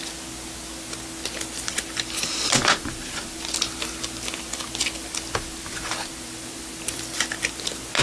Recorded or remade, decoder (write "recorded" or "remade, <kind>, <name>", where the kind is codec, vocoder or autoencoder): recorded